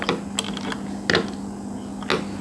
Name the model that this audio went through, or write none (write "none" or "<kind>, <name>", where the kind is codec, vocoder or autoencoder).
none